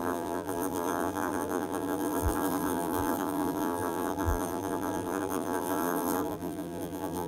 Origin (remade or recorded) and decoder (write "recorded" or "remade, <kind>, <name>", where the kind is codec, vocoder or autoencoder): remade, vocoder, BigVGAN v2